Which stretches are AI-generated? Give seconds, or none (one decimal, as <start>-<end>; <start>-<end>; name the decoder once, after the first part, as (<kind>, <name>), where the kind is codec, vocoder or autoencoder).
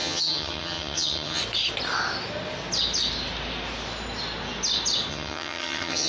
0.0-1.4 (vocoder, HiFi-GAN); 5.1-6.1